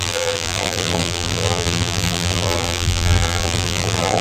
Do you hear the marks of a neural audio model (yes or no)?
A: yes